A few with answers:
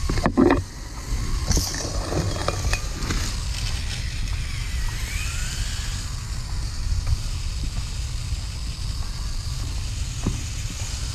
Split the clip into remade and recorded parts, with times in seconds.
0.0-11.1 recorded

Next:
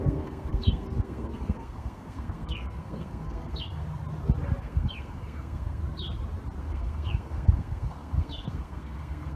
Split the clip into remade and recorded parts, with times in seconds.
0.0-3.8 remade; 3.8-4.6 recorded; 4.6-5.8 remade; 5.8-6.6 recorded; 6.6-9.4 remade

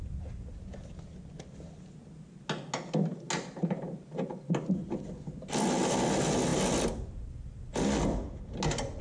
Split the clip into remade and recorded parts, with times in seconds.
0.0-9.0 recorded